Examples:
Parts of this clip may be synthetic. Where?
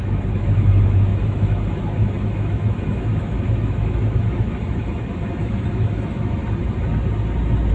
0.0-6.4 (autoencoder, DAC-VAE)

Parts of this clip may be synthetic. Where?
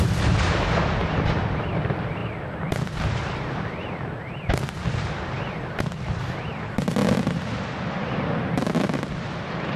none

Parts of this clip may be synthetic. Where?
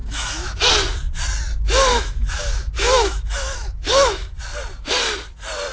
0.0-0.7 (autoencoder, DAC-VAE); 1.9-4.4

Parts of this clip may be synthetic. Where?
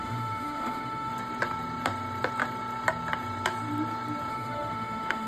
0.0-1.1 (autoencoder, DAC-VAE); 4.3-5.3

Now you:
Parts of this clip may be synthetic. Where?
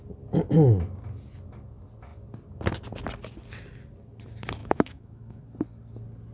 4.6-5.4 (autoencoder, DAC-VAE)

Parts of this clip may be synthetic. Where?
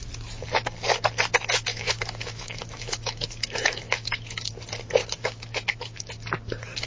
1.7-4.5 (autoencoder, DAC-VAE); 5.0-6.1